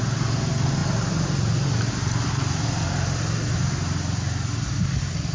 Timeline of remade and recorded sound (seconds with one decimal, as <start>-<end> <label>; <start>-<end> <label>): 0.0-5.3 recorded